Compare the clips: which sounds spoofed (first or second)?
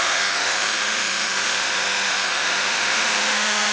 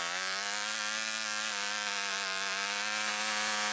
first